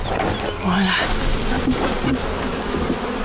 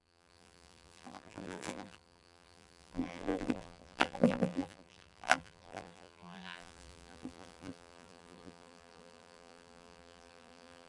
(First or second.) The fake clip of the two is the second